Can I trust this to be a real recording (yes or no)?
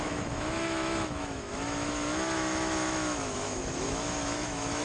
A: no